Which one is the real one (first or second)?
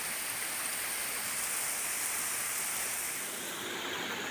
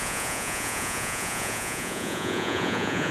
first